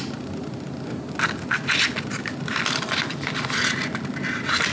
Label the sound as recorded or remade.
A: recorded